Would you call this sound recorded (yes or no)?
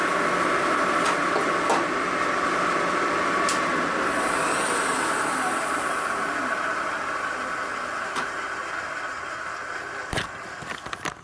yes